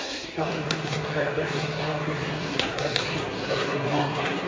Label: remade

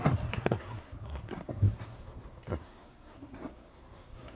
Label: remade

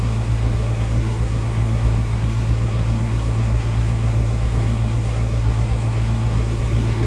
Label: remade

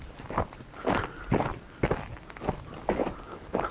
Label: recorded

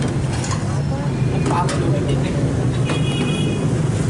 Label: recorded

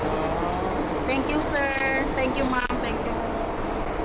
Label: recorded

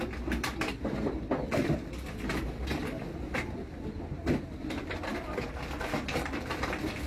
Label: recorded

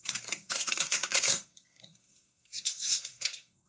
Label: remade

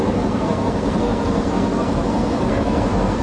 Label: remade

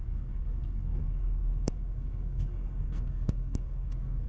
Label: remade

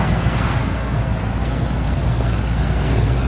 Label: remade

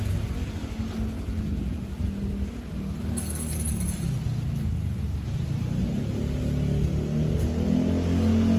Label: recorded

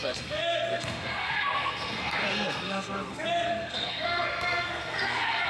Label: remade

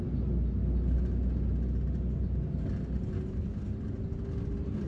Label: recorded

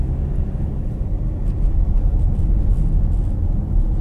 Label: recorded